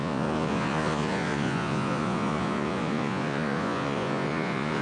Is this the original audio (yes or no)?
no